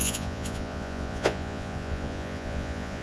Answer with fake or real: fake